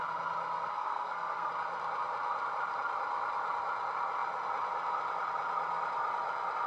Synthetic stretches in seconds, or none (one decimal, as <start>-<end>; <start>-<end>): 0.7-1.5